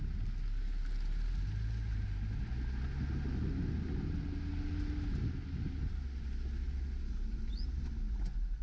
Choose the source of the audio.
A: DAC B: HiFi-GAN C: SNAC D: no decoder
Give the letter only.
D